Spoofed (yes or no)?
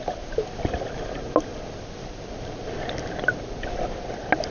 no